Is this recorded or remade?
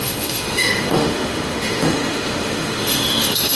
remade